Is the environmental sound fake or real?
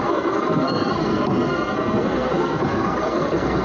fake